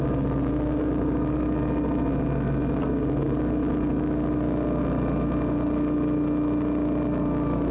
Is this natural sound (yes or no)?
yes